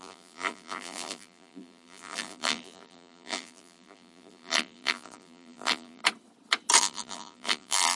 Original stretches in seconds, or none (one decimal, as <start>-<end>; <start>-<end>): 6.0-6.8

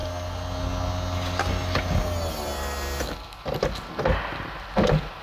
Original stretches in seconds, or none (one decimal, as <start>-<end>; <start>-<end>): 0.0-5.2

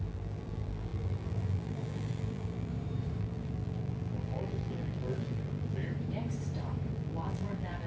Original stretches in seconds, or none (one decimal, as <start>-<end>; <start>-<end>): 2.7-3.2; 5.8-6.9

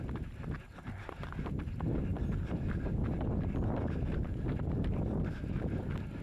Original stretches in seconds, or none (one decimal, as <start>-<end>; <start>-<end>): 0.0-2.1; 5.8-6.2

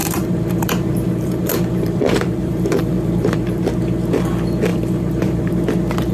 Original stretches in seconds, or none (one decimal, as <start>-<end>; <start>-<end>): 3.7-4.7; 5.5-6.1